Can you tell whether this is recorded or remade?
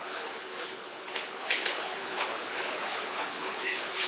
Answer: remade